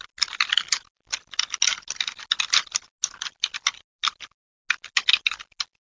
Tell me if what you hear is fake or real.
real